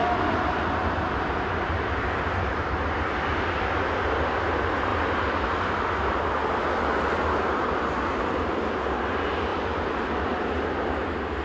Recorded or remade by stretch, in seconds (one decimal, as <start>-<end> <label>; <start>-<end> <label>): 0.0-3.3 remade; 3.3-11.4 recorded